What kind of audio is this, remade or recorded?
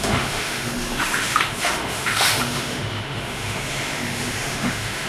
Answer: remade